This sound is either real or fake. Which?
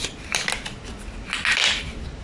real